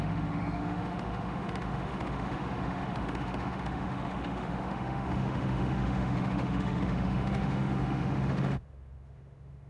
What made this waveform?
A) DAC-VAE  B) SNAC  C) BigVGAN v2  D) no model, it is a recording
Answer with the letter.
A